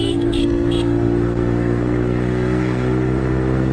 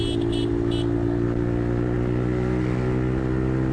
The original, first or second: second